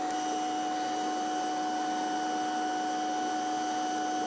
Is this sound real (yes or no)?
yes